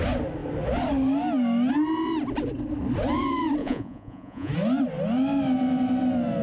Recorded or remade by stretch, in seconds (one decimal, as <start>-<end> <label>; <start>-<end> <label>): 0.0-3.6 recorded; 3.6-4.5 remade; 4.5-6.4 recorded